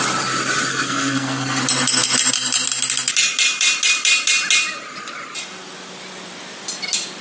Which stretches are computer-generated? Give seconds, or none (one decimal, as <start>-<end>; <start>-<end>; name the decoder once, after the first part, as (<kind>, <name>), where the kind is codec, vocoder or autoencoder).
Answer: 0.7-1.6 (codec, SNAC)